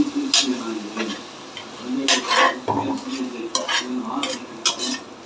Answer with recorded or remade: recorded